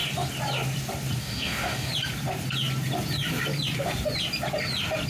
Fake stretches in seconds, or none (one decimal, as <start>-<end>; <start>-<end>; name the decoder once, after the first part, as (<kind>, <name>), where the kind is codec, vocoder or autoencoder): 1.2-1.9 (codec, DAC)